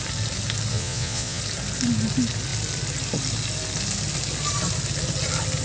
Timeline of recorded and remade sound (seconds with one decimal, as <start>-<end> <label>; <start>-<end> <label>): 0.0-0.7 recorded; 0.7-1.4 remade; 1.4-5.6 recorded